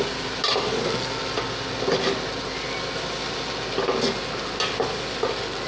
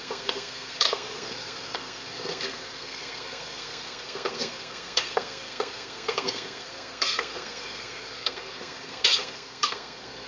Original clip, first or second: first